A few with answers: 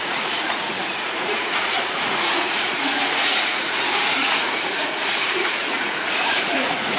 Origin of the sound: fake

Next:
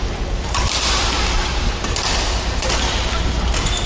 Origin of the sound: real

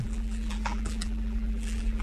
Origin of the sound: fake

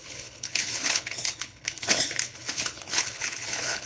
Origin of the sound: fake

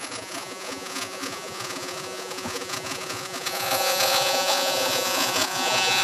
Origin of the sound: fake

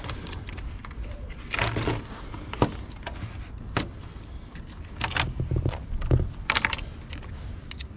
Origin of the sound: real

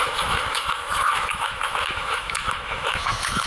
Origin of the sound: fake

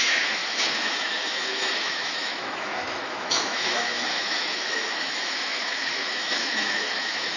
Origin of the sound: fake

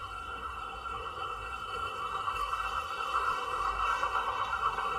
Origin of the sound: fake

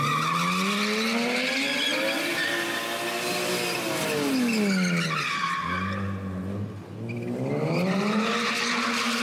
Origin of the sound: real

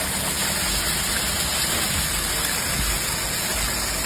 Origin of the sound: real